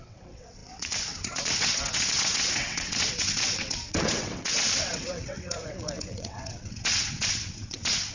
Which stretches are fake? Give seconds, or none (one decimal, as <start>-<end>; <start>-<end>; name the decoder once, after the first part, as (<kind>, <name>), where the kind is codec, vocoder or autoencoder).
0.0-8.1 (vocoder, WaveNeXt)